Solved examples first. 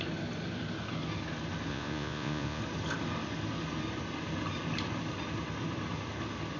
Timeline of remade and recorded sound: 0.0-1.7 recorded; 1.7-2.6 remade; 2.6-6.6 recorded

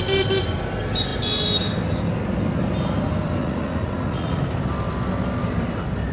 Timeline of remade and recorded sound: 0.0-3.4 recorded; 3.4-4.4 remade; 4.4-6.1 recorded